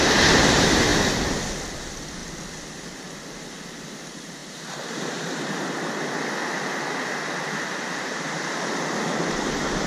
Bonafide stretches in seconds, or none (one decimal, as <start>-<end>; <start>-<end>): 0.9-1.7; 2.2-3.0; 6.4-8.0